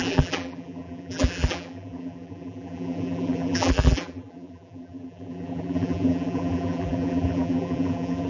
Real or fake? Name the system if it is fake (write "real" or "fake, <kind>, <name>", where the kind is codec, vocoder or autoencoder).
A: fake, vocoder, BigVGAN v2